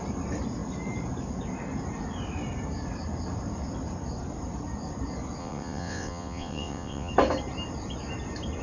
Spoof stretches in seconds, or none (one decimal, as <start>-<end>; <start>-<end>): 5.4-7.1